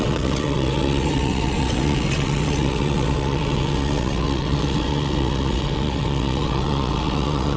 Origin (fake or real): fake